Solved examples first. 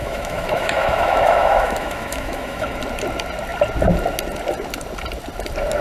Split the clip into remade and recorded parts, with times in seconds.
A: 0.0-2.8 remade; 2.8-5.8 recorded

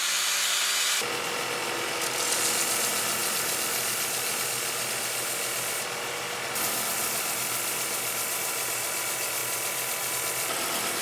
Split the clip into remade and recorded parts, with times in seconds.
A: 0.0-11.0 recorded

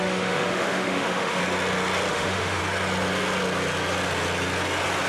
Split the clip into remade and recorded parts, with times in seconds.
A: 0.0-1.4 remade; 1.4-2.1 recorded; 2.1-2.6 remade; 2.6-5.1 recorded

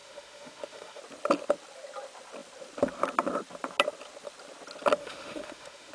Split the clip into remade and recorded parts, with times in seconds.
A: 0.0-1.0 remade; 1.0-5.0 recorded; 5.0-5.9 remade